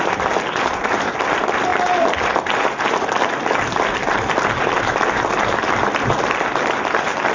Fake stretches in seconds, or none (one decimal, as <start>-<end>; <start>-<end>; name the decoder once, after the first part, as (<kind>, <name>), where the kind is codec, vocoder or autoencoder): none